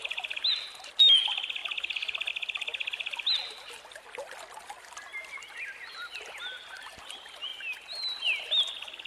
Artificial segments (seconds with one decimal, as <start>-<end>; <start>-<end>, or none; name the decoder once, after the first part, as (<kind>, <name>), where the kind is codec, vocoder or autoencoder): none